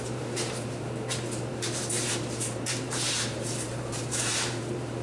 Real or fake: fake